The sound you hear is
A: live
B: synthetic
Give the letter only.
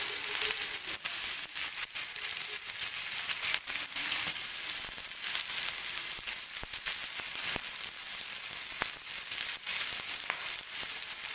A